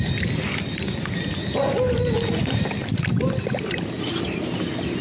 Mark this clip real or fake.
real